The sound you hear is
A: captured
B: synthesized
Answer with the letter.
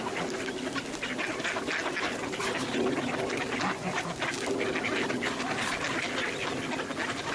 A